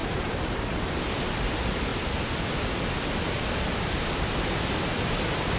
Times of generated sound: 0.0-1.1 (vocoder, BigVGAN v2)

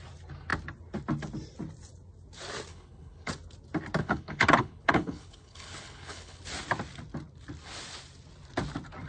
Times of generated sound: 2.7-3.3 (codec, HILCodec); 4.0-6.4